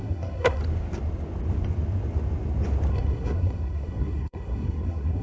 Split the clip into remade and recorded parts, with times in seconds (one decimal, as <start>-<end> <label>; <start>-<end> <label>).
0.0-0.6 remade; 0.6-2.9 recorded; 2.9-5.2 remade